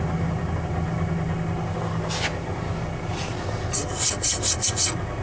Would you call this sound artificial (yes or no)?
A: no